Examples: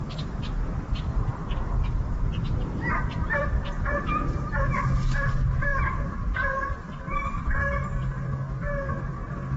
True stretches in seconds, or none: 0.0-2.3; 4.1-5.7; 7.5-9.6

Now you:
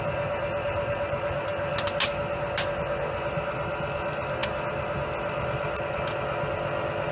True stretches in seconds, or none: 0.0-7.1

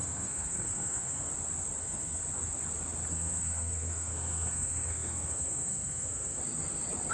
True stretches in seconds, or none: 1.3-1.8; 2.2-3.1; 6.4-7.1